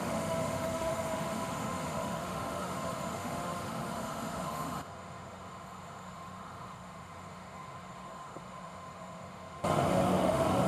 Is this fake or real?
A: fake